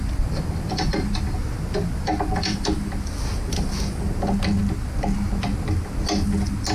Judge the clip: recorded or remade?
recorded